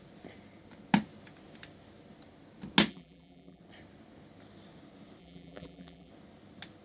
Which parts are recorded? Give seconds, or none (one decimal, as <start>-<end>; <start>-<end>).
0.0-2.9; 3.6-5.2; 6.1-6.8

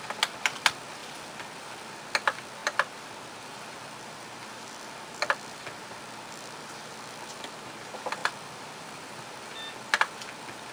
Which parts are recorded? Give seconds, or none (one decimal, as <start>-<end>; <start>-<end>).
0.0-1.0; 2.0-2.6; 6.0-8.2; 9.7-10.7

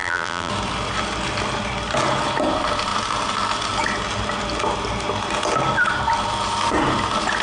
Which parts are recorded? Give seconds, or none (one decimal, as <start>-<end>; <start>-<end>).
0.5-7.4

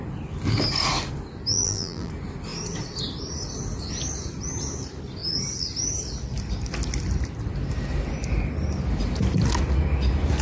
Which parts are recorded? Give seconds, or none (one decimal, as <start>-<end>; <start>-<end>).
0.0-1.5; 2.1-10.4

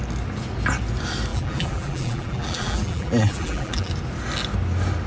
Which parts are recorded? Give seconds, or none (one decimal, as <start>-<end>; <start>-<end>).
0.0-1.3; 3.9-5.1

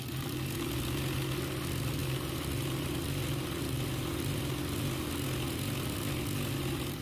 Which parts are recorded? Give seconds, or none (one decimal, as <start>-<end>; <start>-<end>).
0.0-2.0; 2.8-7.0

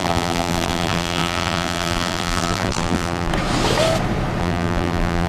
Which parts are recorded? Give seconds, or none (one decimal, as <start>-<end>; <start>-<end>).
3.3-4.4